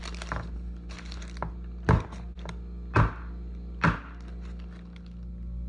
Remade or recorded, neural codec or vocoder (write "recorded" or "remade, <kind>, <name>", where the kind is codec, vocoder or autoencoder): recorded